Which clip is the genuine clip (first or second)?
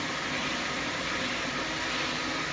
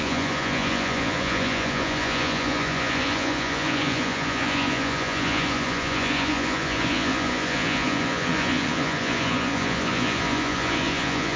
first